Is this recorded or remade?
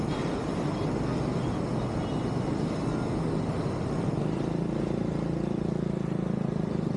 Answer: recorded